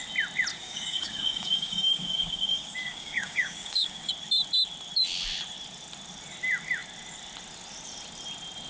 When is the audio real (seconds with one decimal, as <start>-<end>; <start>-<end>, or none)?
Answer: 0.0-0.5; 4.1-8.7